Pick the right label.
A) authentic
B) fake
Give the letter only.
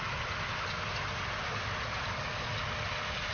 A